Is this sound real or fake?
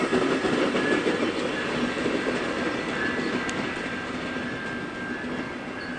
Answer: real